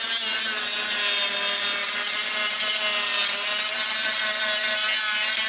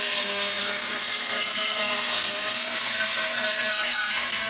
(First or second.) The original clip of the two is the first